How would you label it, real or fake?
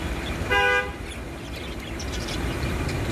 real